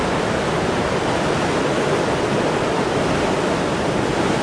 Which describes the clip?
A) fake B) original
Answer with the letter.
B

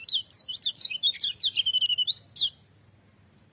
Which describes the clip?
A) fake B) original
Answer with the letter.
A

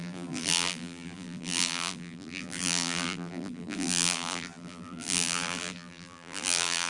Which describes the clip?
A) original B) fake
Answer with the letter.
B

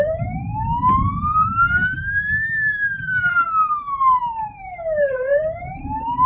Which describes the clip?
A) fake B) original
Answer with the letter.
A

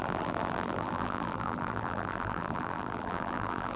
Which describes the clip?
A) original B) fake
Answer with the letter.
B